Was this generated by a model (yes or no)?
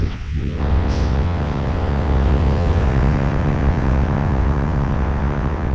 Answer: yes